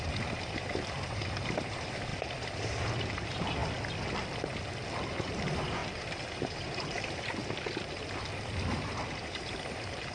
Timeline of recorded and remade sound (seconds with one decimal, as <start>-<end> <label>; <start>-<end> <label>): 0.0-3.6 remade; 3.6-5.1 recorded; 5.1-7.4 remade; 7.4-9.2 recorded; 9.2-10.1 remade